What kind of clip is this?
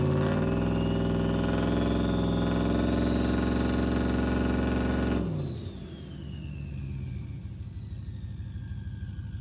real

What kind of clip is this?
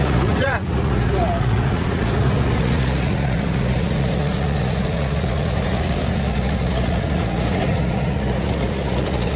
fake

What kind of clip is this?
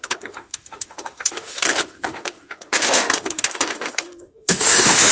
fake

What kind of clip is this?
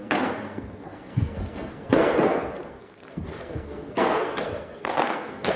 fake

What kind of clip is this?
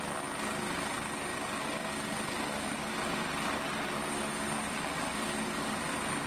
real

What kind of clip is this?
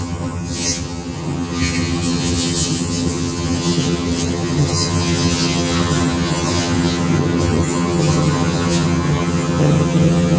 fake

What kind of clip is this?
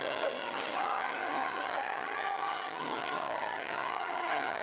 fake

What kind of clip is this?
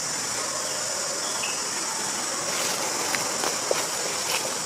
real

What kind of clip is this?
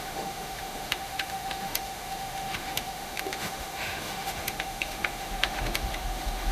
fake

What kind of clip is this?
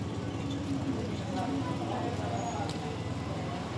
real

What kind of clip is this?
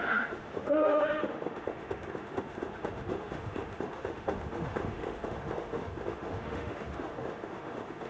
fake